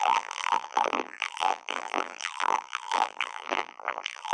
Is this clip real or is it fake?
fake